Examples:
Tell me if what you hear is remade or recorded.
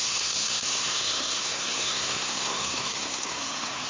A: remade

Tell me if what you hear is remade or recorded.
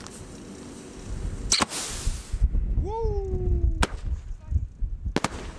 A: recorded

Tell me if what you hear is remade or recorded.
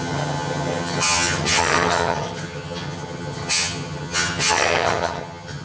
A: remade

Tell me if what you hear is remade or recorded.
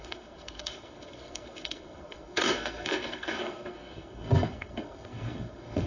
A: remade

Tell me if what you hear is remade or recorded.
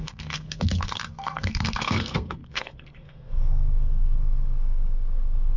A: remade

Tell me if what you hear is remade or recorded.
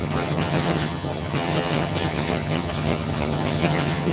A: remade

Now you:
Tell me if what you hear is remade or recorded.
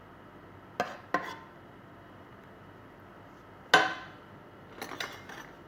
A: recorded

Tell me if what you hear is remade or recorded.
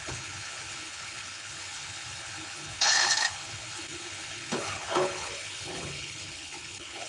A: remade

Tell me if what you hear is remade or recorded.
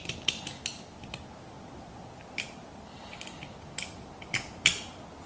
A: recorded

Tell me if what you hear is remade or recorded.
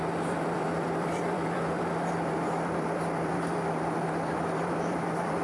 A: remade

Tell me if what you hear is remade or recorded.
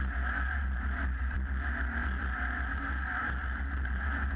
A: recorded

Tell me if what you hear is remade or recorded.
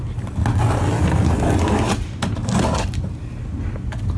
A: recorded